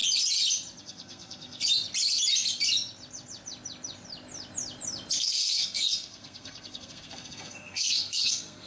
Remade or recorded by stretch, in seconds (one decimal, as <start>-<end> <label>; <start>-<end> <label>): 0.0-0.8 recorded; 0.8-1.6 remade; 1.6-5.2 recorded; 5.2-8.7 remade